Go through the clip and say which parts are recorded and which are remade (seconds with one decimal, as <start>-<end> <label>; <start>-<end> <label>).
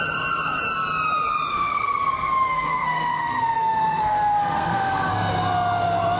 0.0-1.5 recorded; 1.5-5.1 remade; 5.1-6.2 recorded